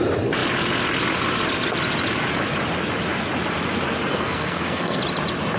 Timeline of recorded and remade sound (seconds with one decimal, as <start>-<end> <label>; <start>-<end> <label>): 0.0-4.1 recorded; 4.1-5.0 remade; 5.0-5.6 recorded